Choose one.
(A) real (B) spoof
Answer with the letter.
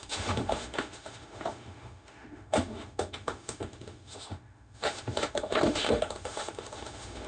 B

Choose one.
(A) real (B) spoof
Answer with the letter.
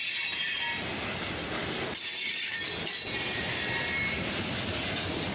A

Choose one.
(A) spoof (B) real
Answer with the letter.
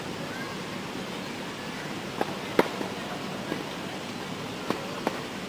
B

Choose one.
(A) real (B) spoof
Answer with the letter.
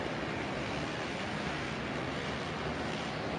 A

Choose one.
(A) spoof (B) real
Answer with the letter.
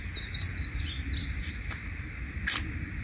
B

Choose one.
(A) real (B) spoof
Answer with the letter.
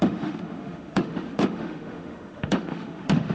B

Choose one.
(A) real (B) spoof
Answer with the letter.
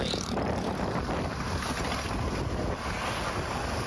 A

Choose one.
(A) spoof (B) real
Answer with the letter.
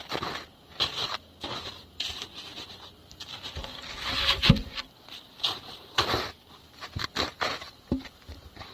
B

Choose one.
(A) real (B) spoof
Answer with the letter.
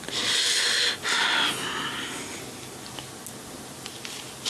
A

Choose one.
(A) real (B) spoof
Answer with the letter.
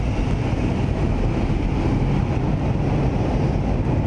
A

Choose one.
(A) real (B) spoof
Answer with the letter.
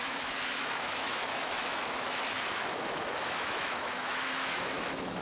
B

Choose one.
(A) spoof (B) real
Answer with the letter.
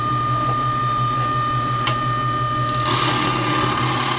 B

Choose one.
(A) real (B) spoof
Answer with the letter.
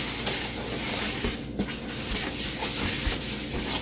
A